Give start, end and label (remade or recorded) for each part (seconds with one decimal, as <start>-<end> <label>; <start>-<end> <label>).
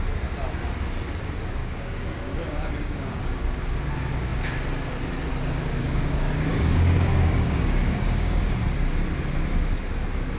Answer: 0.0-1.6 recorded; 1.6-3.2 remade; 3.2-5.7 recorded; 5.7-8.5 remade; 8.5-10.4 recorded